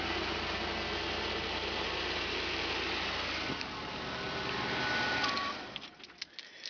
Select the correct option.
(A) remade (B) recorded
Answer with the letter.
B